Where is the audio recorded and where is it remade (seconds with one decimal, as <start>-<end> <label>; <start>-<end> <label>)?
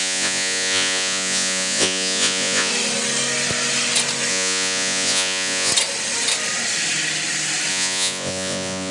0.0-2.7 remade; 2.7-4.3 recorded; 4.3-5.7 remade; 5.7-7.7 recorded; 7.7-8.9 remade